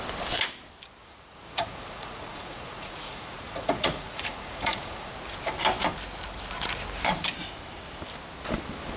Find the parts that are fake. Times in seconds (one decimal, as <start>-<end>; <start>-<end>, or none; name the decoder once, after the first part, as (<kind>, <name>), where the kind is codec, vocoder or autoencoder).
1.0-5.1 (vocoder, Vocos)